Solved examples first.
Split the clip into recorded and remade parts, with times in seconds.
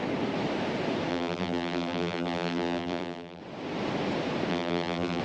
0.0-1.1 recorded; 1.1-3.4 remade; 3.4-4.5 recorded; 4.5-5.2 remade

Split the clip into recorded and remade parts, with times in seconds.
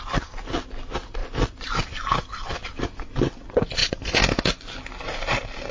0.0-5.7 recorded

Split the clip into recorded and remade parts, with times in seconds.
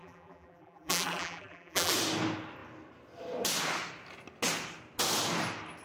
0.0-1.9 remade; 1.9-5.8 recorded